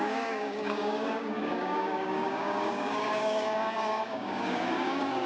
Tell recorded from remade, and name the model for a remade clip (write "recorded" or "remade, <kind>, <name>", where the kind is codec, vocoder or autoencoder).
remade, codec, DAC